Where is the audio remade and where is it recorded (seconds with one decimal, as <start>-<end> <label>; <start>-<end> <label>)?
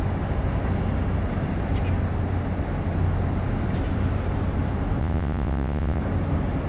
0.0-5.0 recorded; 5.0-6.0 remade; 6.0-6.7 recorded